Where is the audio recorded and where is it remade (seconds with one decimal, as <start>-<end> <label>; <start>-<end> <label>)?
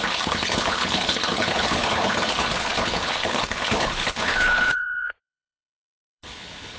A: 0.0-6.8 remade